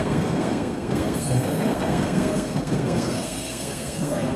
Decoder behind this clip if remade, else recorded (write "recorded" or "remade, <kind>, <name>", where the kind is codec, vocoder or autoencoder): remade, codec, SNAC